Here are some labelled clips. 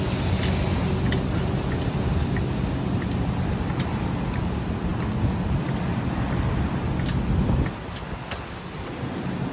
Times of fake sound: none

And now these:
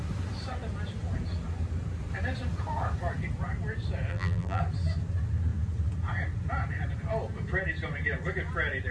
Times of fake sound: 4.1-4.6

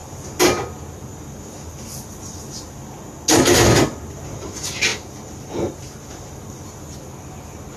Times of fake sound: none

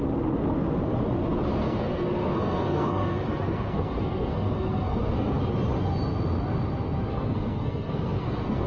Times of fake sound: 1.6-5.4; 7.1-8.7

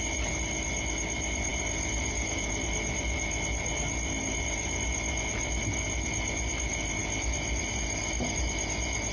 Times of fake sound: none